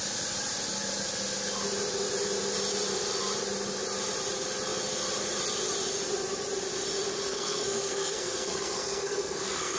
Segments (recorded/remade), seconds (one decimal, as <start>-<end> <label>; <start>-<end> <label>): 0.0-7.3 recorded; 7.3-9.8 remade